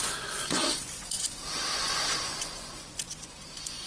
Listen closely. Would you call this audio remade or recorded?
remade